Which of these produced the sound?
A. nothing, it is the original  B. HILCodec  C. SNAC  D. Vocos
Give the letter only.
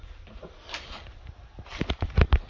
A